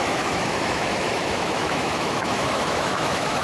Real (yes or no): no